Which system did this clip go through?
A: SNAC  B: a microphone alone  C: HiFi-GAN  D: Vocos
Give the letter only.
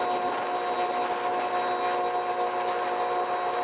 B